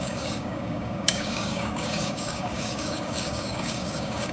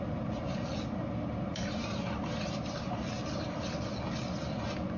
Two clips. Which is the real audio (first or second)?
second